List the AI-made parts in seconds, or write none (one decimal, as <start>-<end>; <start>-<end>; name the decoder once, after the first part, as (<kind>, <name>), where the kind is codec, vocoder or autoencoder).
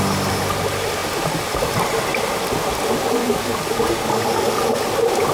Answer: 3.2-4.6 (codec, DAC)